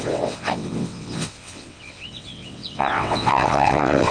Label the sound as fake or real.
fake